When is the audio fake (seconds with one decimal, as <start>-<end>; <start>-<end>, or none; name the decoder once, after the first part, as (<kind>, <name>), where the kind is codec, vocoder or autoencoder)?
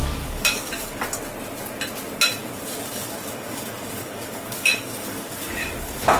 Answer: 0.0-1.0 (codec, DAC); 2.4-6.2